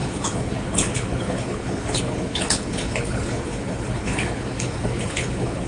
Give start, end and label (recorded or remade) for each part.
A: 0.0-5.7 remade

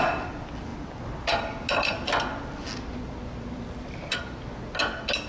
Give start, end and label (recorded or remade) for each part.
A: 0.0-5.3 recorded

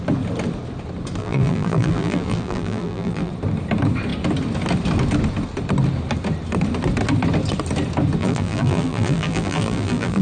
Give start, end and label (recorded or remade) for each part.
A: 0.0-1.2 recorded; 1.2-3.3 remade; 3.3-8.2 recorded; 8.2-10.2 remade